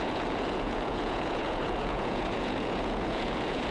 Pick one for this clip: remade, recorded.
remade